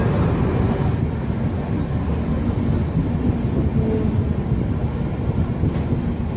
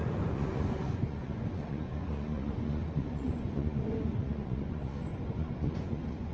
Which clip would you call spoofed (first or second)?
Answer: second